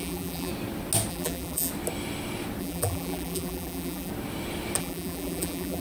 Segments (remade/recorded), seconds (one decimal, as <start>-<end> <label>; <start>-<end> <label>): 0.0-0.5 remade; 0.5-1.1 recorded; 1.1-1.7 remade; 1.7-2.6 recorded; 2.6-4.1 remade; 4.1-4.8 recorded; 4.8-5.8 remade